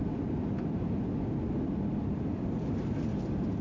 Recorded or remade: recorded